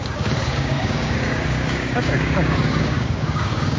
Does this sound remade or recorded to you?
remade